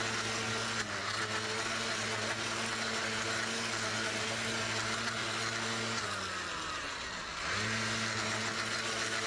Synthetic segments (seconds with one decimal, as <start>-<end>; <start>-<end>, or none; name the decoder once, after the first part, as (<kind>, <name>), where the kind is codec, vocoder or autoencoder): none